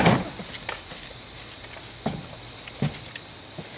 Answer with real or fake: real